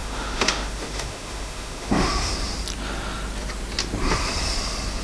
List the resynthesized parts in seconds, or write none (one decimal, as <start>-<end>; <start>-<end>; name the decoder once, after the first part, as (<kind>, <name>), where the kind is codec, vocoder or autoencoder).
0.0-2.3 (autoencoder, DAC-VAE)